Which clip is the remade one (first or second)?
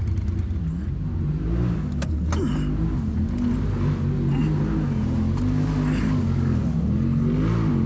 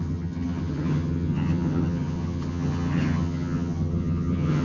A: second